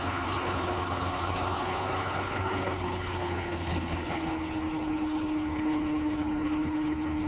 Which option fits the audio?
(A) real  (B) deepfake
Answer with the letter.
B